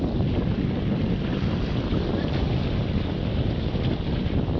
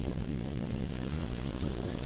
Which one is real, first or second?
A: first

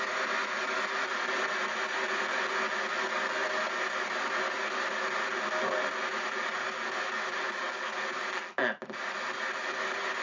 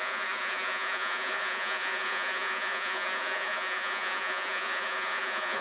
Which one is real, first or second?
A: first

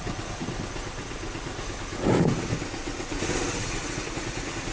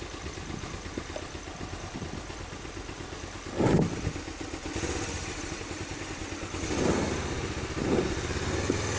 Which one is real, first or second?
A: second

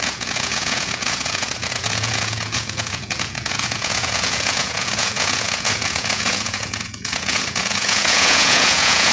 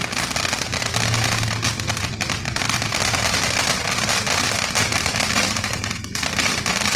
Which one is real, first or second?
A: second